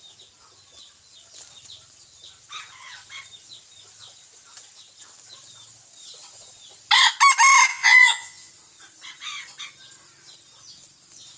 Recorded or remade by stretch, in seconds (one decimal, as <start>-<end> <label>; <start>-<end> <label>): 0.0-7.7 recorded; 7.7-8.5 remade; 8.5-11.4 recorded